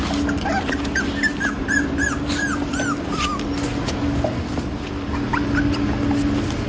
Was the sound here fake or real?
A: real